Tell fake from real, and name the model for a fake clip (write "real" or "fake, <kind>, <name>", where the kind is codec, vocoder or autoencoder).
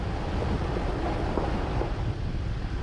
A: real